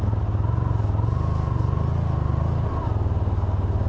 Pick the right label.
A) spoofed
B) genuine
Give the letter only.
B